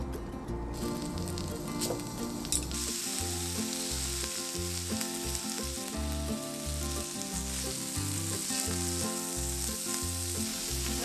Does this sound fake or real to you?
real